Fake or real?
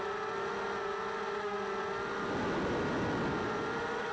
real